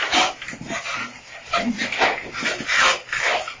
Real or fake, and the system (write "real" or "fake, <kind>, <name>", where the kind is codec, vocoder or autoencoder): real